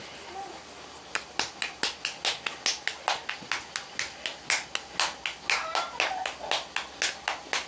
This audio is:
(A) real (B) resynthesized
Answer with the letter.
A